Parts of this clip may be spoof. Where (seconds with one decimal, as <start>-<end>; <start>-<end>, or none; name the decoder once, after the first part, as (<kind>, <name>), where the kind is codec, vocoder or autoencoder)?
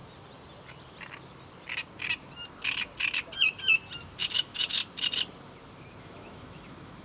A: 4.2-4.8 (autoencoder, DAC-VAE); 6.0-7.0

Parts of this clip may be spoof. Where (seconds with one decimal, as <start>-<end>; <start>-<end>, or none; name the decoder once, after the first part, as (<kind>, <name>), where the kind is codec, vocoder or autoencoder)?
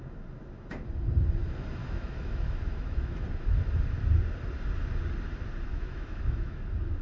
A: 1.8-3.2 (autoencoder, DAC-VAE); 5.7-6.6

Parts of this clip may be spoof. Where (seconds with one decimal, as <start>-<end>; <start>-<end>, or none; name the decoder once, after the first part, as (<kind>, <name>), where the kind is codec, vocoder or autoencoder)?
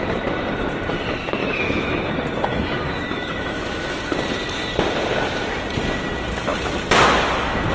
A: 1.4-2.1 (autoencoder, DAC-VAE); 2.5-4.0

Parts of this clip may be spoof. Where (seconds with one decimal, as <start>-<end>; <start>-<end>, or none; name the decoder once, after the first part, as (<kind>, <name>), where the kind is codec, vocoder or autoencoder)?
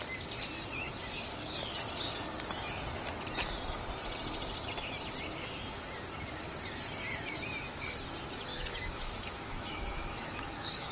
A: 8.5-10.9 (autoencoder, DAC-VAE)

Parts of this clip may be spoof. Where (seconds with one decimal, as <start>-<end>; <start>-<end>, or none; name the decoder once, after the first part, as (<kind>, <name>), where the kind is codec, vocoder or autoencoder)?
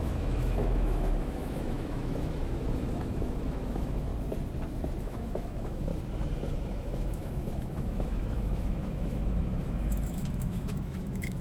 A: 0.0-4.1 (autoencoder, DAC-VAE); 5.0-5.9; 6.5-11.4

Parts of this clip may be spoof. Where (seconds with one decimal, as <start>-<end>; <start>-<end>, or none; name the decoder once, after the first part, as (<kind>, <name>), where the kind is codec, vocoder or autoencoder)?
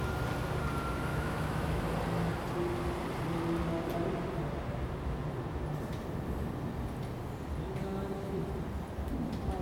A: 1.1-1.8 (autoencoder, DAC-VAE)